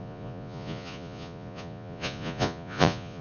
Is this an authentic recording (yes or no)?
no